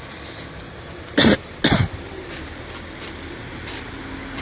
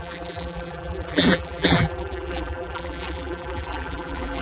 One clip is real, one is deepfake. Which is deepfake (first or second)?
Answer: second